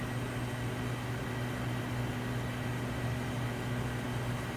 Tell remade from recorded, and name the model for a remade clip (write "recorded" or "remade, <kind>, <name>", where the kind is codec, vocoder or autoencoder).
recorded